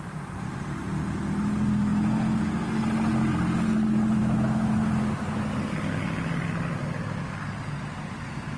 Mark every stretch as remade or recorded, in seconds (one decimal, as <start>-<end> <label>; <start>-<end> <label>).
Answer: 0.0-4.2 recorded; 4.2-4.8 remade; 4.8-8.6 recorded